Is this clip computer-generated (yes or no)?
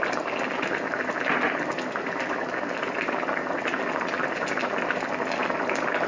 no